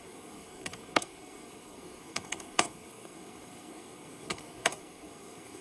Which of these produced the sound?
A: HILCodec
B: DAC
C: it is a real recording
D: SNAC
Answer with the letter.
D